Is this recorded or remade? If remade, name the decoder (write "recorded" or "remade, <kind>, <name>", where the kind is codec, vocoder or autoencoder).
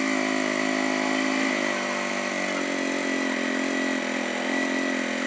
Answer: recorded